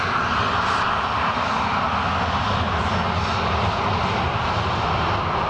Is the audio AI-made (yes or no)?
no